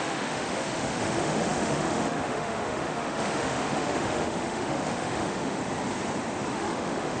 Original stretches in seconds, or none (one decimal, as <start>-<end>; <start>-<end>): 5.6-6.5